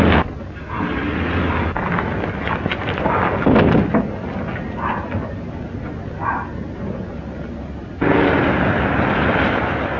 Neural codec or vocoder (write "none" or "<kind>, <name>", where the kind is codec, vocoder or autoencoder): none